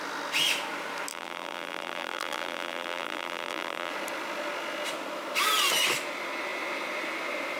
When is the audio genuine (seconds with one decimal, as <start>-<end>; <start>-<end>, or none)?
0.0-1.1; 3.9-7.6

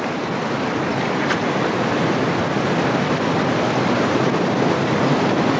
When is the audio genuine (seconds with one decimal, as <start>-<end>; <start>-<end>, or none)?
0.0-5.6